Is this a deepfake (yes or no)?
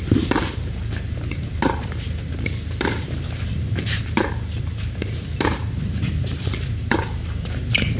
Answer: yes